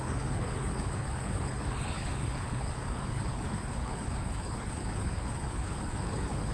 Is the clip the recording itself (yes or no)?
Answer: no